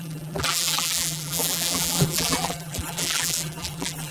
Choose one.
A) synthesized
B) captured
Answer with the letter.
A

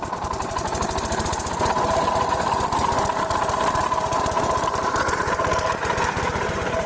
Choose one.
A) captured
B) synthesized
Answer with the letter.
A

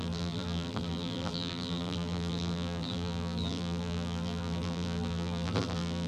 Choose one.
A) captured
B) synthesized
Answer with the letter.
B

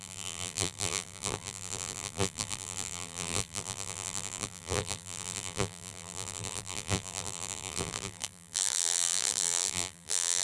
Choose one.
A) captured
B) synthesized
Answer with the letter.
B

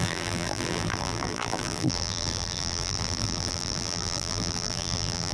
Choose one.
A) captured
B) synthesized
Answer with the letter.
B